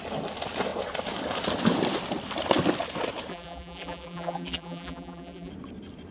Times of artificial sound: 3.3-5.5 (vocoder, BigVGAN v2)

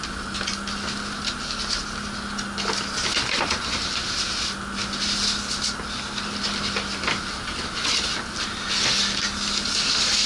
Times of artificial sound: none

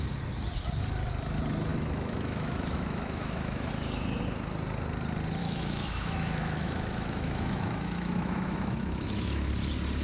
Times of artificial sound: 1.7-3.7 (autoencoder, DAC-VAE); 5.4-9.5

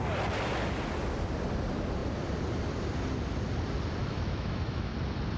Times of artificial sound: 4.0-4.9 (autoencoder, DAC-VAE)

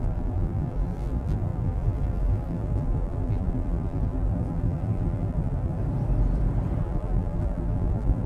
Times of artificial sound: 0.0-5.8 (vocoder, BigVGAN v2); 6.8-8.3

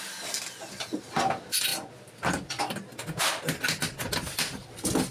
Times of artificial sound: none